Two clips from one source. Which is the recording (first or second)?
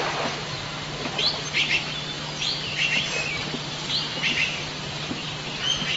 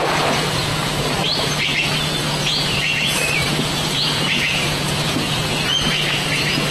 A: first